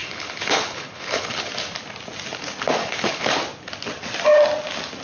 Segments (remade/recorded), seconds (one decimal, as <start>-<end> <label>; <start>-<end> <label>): 0.0-1.5 remade; 1.5-2.8 recorded; 2.8-3.3 remade; 3.3-5.0 recorded